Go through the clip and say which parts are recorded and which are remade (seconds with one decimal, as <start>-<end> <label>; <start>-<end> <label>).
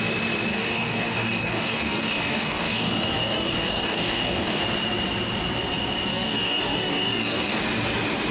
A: 0.0-0.5 recorded; 0.5-4.6 remade; 4.6-6.1 recorded; 6.1-7.6 remade; 7.6-8.3 recorded